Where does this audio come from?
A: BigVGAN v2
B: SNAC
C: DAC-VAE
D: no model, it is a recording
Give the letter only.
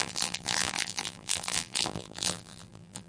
A